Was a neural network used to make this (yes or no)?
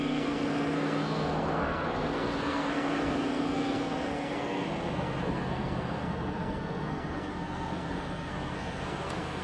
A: yes